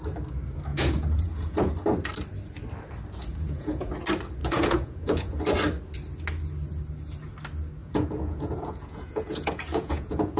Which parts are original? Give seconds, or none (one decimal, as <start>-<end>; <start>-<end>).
0.0-0.7; 1.7-3.3; 3.9-4.4; 5.4-7.8